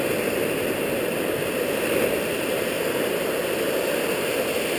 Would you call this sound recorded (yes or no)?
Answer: yes